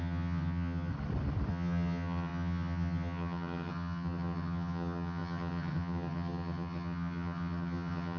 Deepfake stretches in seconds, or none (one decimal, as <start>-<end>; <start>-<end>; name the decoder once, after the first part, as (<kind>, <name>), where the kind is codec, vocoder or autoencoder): 0.0-0.9 (vocoder, HiFi-GAN); 1.5-8.2